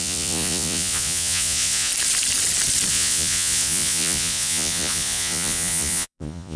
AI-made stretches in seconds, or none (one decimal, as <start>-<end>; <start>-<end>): 0.0-1.9; 2.9-6.6